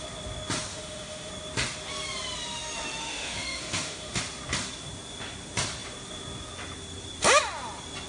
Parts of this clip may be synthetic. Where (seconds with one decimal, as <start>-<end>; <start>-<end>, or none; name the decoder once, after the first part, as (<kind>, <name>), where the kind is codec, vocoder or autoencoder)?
0.7-1.3 (autoencoder, DAC-VAE); 3.0-4.2